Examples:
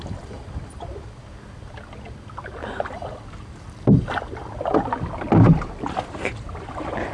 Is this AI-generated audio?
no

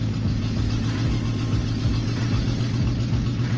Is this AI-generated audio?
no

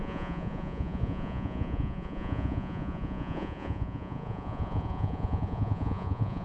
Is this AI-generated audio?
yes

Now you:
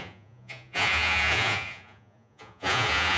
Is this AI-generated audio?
yes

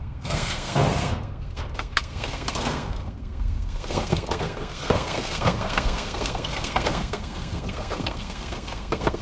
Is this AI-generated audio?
yes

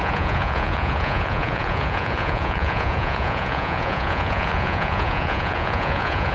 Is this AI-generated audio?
yes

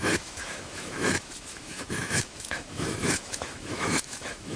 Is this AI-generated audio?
yes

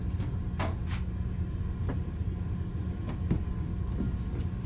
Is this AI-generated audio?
no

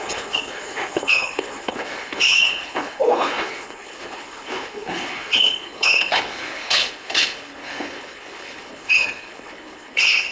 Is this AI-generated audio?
yes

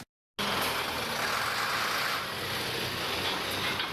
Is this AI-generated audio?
no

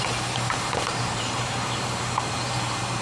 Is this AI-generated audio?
yes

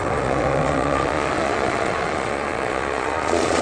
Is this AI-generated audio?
yes